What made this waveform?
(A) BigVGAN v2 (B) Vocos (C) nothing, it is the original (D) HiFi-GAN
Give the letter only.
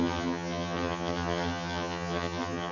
D